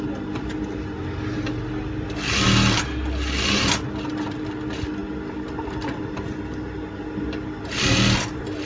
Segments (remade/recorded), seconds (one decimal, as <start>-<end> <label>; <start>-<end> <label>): 0.0-8.7 recorded